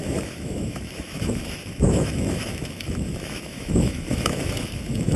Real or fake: fake